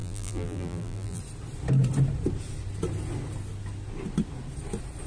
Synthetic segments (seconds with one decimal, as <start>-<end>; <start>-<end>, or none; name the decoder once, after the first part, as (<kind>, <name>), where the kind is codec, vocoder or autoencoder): 0.0-1.2 (vocoder, BigVGAN v2)